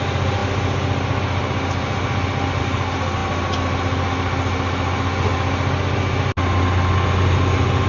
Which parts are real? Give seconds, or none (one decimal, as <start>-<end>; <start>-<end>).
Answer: 0.0-7.9